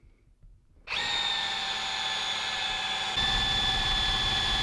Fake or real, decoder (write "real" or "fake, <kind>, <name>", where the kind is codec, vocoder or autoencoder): real